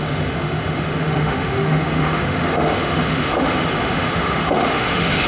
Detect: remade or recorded remade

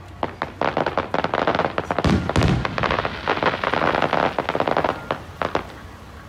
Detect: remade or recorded recorded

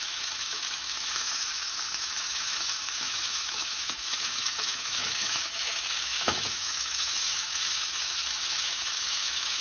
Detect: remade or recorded remade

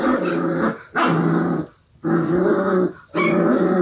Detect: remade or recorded recorded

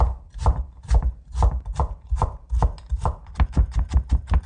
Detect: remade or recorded recorded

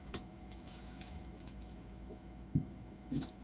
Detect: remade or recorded remade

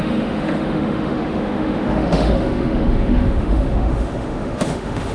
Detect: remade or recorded remade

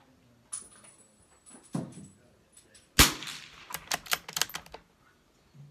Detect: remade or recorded recorded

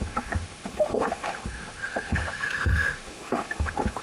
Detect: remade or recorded remade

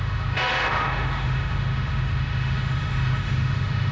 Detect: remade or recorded remade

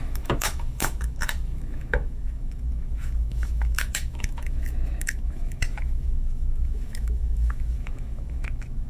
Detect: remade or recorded remade